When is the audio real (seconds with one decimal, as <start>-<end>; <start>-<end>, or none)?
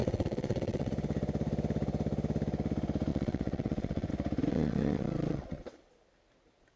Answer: 0.9-3.1; 4.1-4.5; 5.9-6.8